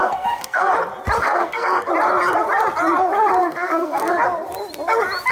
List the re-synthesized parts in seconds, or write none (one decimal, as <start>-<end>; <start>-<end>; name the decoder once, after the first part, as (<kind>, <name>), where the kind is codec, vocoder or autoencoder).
0.0-0.7 (codec, SNAC); 1.2-1.9; 3.4-4.1